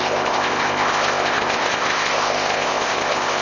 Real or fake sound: fake